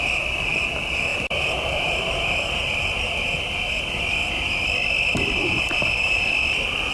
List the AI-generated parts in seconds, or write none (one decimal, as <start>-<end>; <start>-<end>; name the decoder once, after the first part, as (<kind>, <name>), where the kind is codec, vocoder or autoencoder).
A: 5.4-6.3 (vocoder, BigVGAN v2)